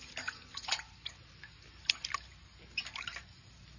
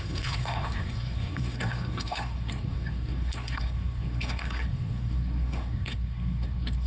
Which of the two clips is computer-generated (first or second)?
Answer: second